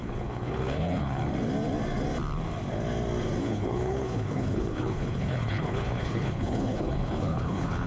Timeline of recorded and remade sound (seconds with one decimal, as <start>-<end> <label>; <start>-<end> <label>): 0.0-1.2 remade; 1.2-3.4 recorded; 3.4-7.9 remade